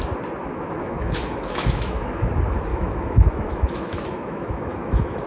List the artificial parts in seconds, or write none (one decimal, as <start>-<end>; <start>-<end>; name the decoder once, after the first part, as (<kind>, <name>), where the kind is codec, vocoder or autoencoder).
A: 0.4-2.3 (autoencoder, DAC-VAE); 2.7-5.3